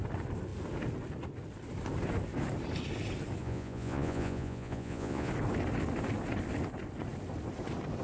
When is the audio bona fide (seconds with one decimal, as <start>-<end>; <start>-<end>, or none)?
0.0-3.4; 5.3-8.0